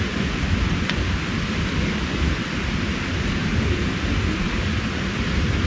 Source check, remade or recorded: recorded